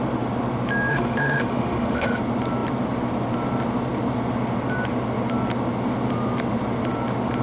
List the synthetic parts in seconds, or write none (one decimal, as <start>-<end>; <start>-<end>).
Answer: 0.9-2.2